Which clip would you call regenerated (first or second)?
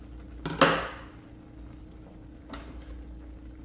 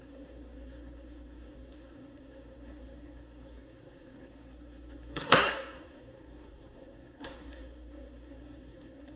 second